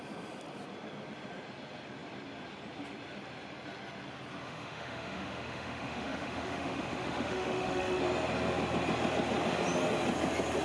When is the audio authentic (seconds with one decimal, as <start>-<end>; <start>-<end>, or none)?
0.0-4.4; 8.0-10.6